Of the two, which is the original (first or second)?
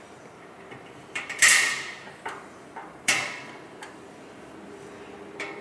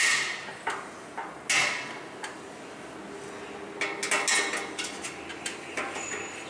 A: second